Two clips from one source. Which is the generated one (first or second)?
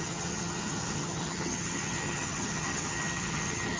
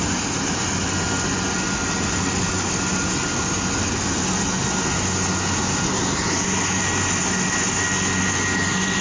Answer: first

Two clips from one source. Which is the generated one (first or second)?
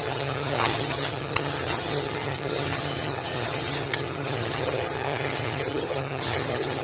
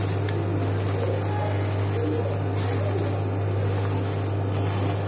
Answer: first